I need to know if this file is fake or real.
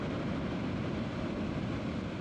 real